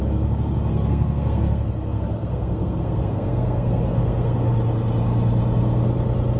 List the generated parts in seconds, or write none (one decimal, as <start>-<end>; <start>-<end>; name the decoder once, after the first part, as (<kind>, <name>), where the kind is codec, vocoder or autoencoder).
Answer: 0.7-4.5 (codec, SNAC)